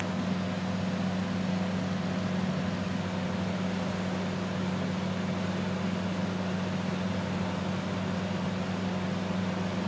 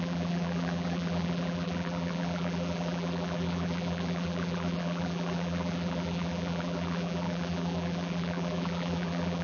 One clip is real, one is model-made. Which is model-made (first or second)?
second